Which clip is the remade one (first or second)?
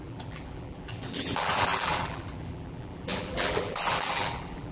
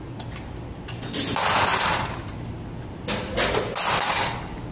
first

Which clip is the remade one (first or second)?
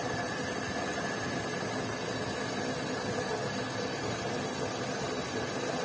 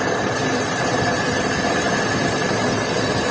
second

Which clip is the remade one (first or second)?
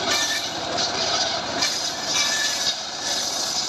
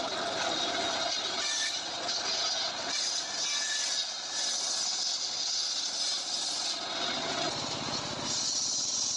first